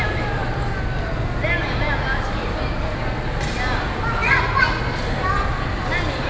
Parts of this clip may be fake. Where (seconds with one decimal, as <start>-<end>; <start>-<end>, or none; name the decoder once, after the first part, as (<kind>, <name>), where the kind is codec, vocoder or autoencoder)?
4.2-4.8 (vocoder, Vocos)